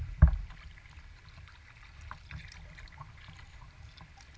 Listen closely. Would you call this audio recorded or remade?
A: recorded